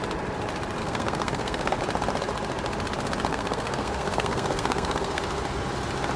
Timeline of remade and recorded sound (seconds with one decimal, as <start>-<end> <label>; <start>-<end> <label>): 0.0-0.8 recorded; 0.8-1.8 remade; 1.8-3.3 recorded; 3.3-5.2 remade; 5.2-6.2 recorded